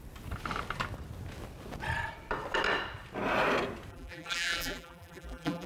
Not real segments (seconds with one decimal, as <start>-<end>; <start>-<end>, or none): 3.9-5.7